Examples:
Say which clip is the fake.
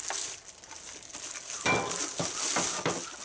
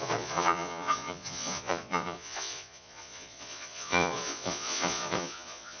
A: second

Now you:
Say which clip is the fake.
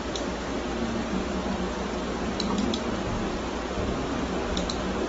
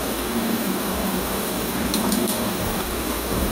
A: second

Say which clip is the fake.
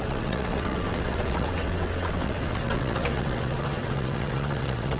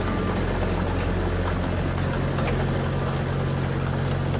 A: first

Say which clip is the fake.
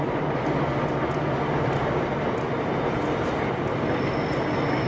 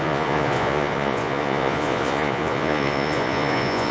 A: second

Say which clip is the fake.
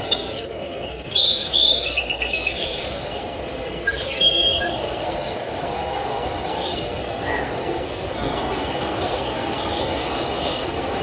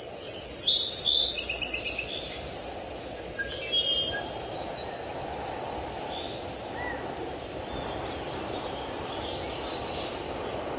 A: first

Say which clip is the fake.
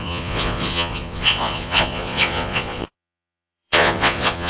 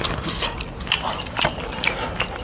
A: first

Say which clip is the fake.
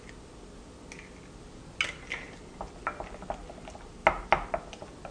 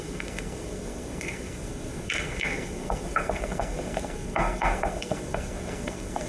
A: second